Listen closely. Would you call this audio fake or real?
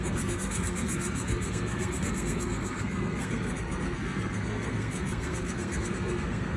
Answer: fake